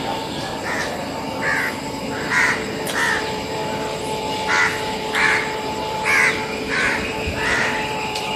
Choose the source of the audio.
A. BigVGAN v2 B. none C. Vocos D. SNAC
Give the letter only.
A